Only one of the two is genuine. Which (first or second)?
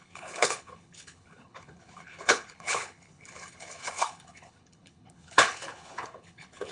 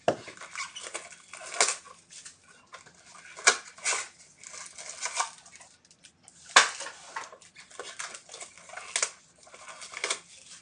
second